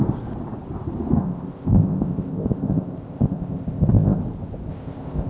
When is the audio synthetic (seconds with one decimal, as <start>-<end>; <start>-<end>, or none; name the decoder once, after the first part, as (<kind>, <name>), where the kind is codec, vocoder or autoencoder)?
1.2-4.2 (codec, ZipCodec); 4.7-5.3